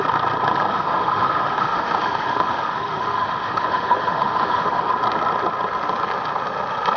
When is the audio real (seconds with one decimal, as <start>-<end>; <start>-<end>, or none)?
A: 0.0-0.7; 4.9-7.0